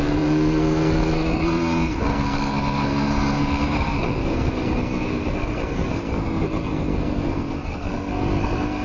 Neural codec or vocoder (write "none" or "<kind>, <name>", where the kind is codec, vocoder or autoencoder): codec, SNAC